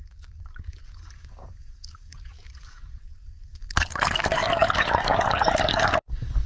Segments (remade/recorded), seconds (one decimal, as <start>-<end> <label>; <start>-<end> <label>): 0.0-6.5 remade